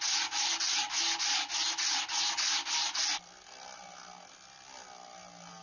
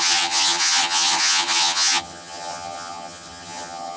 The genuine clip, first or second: first